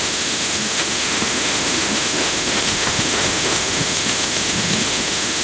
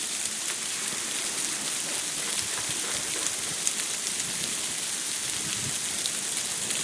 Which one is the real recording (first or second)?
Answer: second